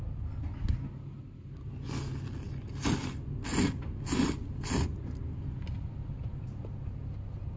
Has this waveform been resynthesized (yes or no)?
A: no